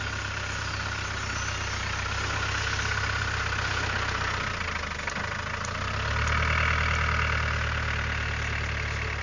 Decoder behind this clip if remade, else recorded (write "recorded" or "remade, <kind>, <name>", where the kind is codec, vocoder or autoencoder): recorded